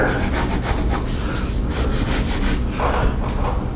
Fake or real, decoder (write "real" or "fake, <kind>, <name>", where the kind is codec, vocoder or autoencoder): real